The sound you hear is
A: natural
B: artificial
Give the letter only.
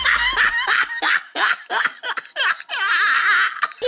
A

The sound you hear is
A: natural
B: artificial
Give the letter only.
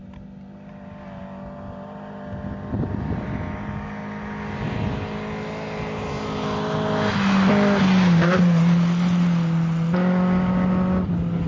A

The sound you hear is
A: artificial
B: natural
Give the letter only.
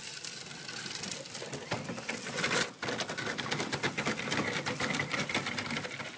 B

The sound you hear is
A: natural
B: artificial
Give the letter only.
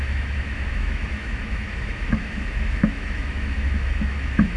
B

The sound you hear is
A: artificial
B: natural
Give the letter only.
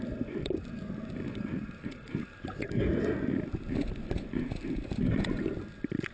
B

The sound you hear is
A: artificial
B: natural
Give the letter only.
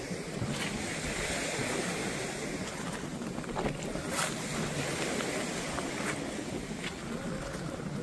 B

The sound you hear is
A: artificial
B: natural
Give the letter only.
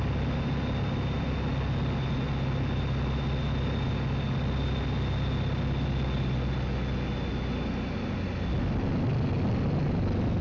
B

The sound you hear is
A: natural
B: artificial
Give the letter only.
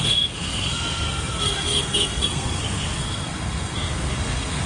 B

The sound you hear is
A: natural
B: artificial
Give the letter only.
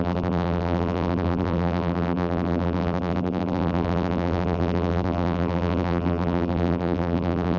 B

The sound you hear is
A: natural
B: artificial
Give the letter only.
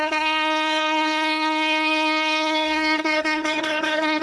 B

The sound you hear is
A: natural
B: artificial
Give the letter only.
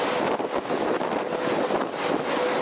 A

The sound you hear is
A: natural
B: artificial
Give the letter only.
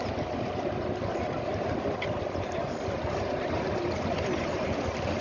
A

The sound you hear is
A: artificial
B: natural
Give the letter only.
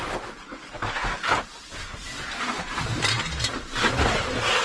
B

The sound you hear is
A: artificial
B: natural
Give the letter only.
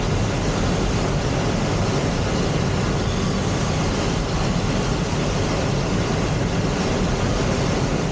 B